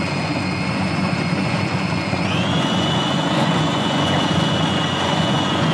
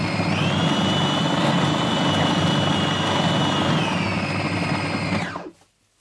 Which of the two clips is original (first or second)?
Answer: second